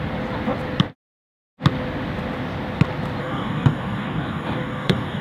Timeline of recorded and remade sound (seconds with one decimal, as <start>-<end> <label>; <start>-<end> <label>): 0.0-3.2 recorded; 3.2-5.2 remade